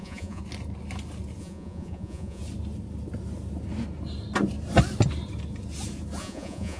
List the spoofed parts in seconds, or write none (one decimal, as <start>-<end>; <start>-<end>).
0.0-0.4; 1.4-2.4; 6.2-6.8